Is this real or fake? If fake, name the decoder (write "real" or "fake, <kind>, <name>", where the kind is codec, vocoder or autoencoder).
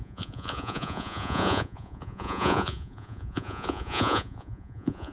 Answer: fake, vocoder, Vocos